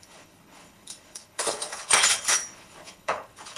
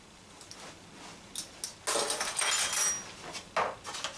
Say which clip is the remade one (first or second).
first